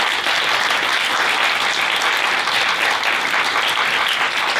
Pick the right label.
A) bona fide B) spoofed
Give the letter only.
A